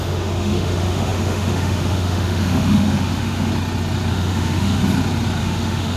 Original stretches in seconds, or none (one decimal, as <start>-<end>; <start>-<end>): 3.5-4.1; 4.8-5.4